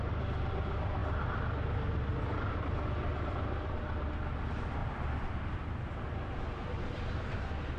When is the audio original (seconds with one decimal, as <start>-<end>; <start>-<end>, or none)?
0.0-7.8